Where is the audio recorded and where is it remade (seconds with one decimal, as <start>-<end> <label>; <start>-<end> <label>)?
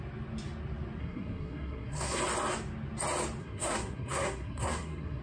0.0-1.0 recorded; 1.0-2.2 remade; 2.2-3.4 recorded; 3.4-5.2 remade